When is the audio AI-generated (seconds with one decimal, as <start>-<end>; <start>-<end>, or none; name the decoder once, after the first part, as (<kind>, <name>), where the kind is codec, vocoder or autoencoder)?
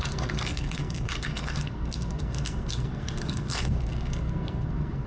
0.0-5.1 (codec, SNAC)